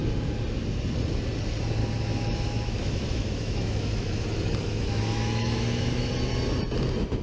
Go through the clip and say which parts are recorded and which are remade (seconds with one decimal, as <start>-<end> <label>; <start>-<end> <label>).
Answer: 0.0-1.8 recorded; 1.8-6.1 remade; 6.1-7.2 recorded